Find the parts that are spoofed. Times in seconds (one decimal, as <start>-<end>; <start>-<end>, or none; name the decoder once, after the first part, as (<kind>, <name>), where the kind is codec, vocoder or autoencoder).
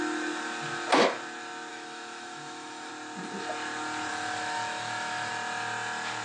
1.7-2.9 (autoencoder, DAC-VAE); 4.1-5.3